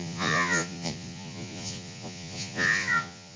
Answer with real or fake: fake